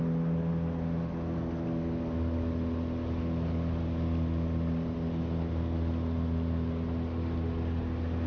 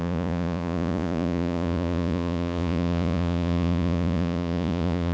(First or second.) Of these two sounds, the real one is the first